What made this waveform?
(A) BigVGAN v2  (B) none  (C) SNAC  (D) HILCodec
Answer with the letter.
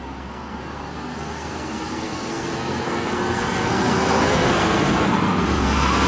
C